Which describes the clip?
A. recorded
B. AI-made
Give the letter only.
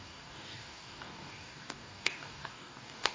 B